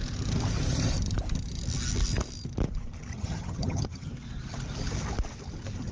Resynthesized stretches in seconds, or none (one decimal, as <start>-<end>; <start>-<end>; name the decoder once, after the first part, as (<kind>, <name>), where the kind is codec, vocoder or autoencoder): 3.1-4.1 (vocoder, HiFi-GAN)